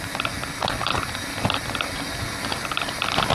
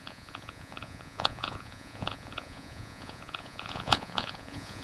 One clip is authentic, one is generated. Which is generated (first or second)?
second